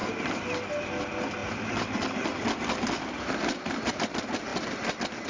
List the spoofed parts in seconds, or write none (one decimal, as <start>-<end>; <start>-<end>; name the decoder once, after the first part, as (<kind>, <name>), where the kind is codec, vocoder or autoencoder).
none